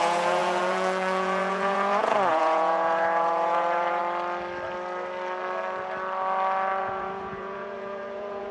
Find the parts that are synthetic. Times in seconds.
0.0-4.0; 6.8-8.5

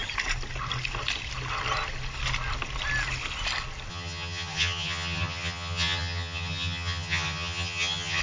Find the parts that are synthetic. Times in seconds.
3.9-8.2

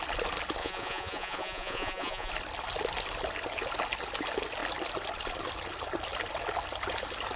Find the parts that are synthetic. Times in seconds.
0.6-2.3

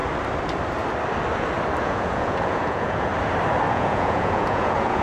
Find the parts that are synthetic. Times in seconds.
1.8-3.1; 3.7-5.0

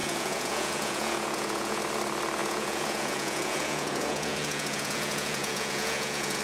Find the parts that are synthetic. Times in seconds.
0.0-1.8; 2.4-6.4

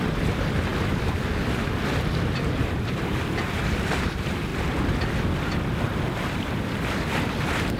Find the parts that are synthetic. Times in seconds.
0.0-0.7; 2.0-4.5; 6.3-7.8